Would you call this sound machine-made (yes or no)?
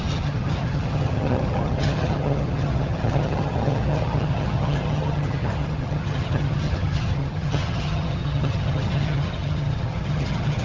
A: yes